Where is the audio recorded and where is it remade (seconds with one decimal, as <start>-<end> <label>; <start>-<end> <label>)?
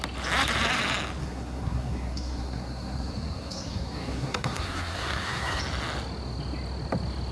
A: 0.0-1.2 recorded; 1.2-5.6 remade; 5.6-7.3 recorded